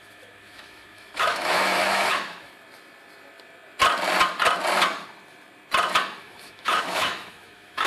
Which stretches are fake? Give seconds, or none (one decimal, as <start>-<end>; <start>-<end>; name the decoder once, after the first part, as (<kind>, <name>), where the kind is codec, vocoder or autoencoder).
0.0-2.5 (autoencoder, DAC-VAE); 6.2-7.9